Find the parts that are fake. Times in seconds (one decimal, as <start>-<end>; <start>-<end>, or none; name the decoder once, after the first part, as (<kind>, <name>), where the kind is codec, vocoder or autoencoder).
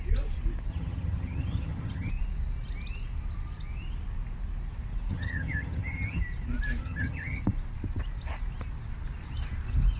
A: 0.7-2.1 (vocoder, HiFi-GAN); 5.1-6.2; 6.8-7.4